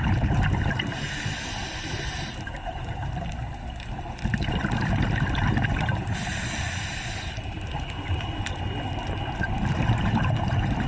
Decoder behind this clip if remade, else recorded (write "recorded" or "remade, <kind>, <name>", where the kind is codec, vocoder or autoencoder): remade, vocoder, BigVGAN v2